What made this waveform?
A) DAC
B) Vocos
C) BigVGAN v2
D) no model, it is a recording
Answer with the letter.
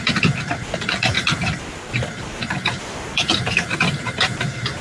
C